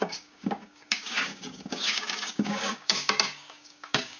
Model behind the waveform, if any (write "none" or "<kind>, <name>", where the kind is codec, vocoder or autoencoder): codec, DAC